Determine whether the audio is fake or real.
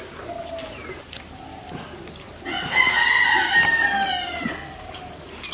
real